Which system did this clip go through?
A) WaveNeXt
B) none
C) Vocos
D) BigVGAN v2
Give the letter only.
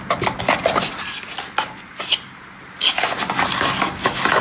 B